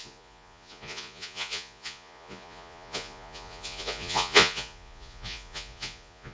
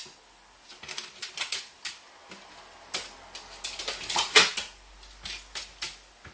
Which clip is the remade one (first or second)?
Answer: first